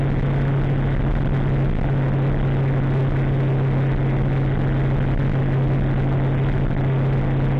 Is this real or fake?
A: real